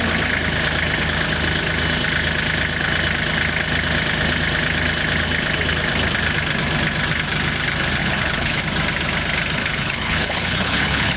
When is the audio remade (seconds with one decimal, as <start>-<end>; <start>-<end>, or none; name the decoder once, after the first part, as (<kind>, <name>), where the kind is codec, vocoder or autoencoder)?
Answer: 8.0-8.6 (codec, HILCodec); 9.6-11.2